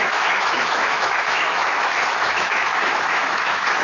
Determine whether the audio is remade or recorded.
remade